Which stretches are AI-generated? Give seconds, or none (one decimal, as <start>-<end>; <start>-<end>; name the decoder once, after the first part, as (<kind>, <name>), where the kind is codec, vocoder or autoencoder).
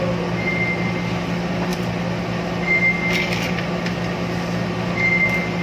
none